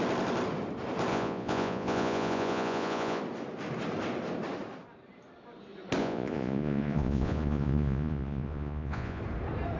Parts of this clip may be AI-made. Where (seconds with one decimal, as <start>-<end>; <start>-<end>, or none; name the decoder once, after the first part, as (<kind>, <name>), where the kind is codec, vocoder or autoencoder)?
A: 1.1-3.2 (vocoder, Vocos); 6.0-9.2